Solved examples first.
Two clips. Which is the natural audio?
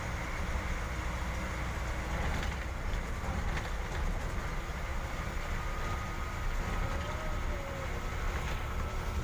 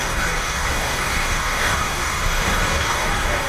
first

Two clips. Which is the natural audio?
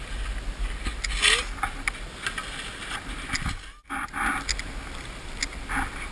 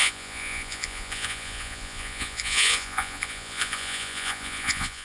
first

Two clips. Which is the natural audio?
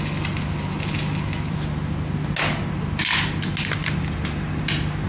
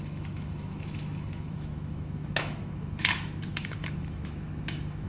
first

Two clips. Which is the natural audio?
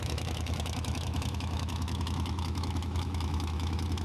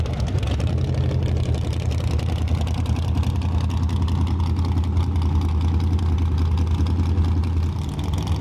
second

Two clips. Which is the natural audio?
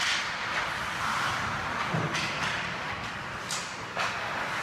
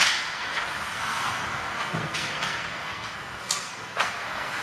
first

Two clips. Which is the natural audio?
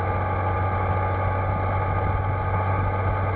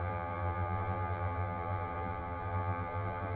first